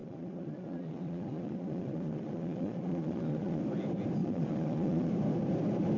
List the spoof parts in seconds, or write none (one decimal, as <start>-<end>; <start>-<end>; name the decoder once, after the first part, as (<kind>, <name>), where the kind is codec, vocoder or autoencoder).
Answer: 0.0-3.6 (vocoder, Vocos); 4.2-5.1